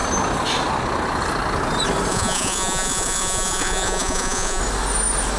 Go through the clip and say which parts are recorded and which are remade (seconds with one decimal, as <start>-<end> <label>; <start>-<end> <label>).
0.0-2.1 recorded; 2.1-4.6 remade; 4.6-5.4 recorded